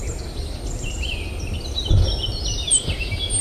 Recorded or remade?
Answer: recorded